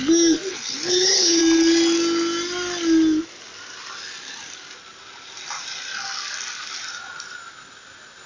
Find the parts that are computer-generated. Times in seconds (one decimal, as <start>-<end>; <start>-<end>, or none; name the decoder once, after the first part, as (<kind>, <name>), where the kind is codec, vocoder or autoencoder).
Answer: 0.5-1.4 (codec, HILCodec)